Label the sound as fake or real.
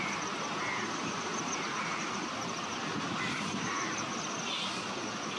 fake